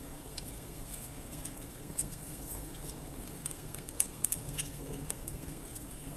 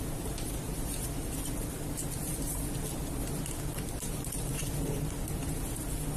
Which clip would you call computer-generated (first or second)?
first